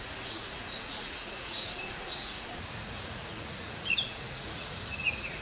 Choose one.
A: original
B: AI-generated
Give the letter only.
B